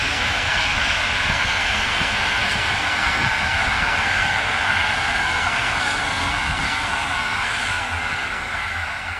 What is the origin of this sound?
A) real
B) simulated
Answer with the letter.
B